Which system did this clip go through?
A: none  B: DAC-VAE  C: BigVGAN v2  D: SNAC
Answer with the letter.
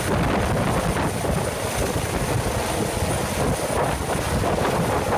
A